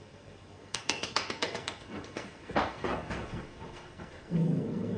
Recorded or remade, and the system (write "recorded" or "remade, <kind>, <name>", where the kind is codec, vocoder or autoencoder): remade, codec, SNAC